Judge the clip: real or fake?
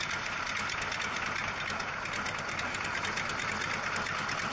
real